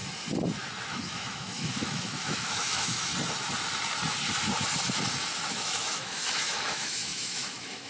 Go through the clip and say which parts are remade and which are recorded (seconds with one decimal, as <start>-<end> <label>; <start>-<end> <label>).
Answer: 0.0-0.9 recorded; 0.9-3.1 remade; 3.1-5.5 recorded; 5.5-7.9 remade